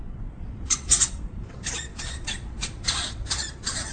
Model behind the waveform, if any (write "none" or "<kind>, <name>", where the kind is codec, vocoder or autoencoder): vocoder, Vocos